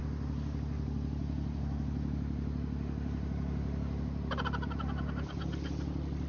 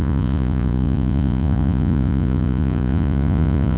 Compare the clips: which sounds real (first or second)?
first